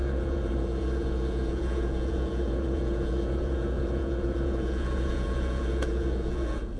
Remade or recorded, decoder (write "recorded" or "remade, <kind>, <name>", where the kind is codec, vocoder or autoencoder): remade, vocoder, Vocos